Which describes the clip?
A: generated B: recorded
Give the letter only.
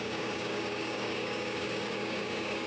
A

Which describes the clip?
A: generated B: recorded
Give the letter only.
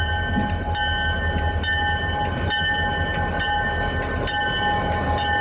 B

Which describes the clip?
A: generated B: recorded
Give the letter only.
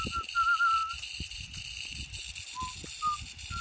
B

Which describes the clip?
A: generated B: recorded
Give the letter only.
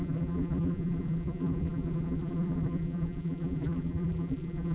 A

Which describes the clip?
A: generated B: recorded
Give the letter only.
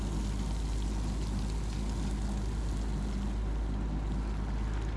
B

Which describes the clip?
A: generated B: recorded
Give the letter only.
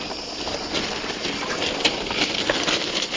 B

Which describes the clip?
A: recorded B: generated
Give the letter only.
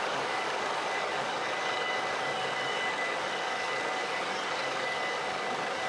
B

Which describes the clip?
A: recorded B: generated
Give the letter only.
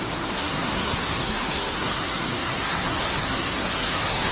B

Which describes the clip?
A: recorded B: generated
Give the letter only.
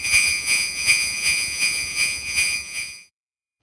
B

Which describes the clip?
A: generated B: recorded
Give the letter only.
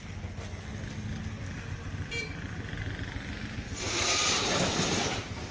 B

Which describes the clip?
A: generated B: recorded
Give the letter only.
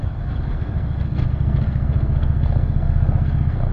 A